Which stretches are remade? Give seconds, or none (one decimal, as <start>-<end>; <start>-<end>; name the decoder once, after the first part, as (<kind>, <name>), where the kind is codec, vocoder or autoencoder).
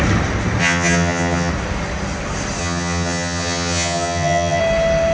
0.6-1.5 (vocoder, HiFi-GAN); 2.6-4.6